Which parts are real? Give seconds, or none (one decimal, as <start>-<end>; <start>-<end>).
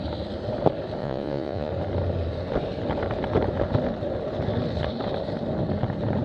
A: 0.0-1.0; 1.7-6.2